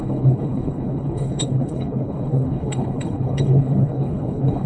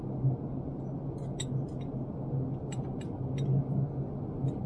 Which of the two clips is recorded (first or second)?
second